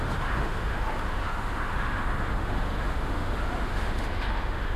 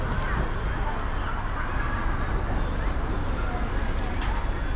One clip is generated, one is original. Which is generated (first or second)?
first